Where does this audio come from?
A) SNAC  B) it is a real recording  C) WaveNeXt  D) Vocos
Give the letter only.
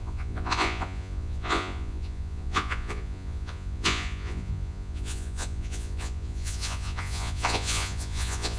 D